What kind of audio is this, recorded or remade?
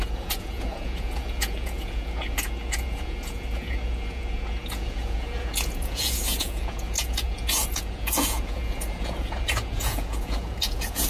remade